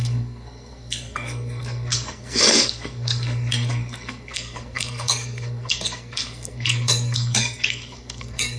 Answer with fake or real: fake